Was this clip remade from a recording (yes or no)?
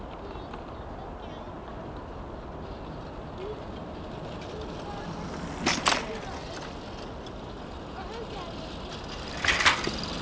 no